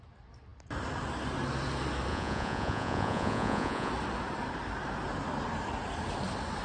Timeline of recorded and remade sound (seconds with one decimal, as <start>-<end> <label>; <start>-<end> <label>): 0.0-2.1 recorded; 2.1-3.9 remade; 3.9-6.6 recorded